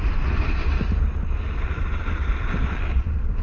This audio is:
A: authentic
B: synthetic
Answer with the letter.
A